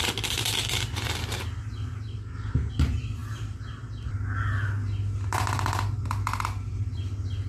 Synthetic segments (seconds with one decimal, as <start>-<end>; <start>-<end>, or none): 2.2-2.7